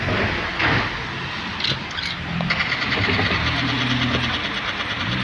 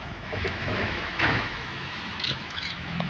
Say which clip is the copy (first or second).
second